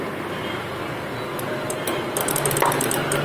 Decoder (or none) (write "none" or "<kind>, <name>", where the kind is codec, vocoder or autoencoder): none